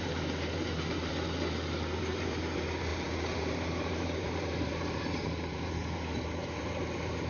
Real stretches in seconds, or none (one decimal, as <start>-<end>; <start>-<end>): 1.1-2.0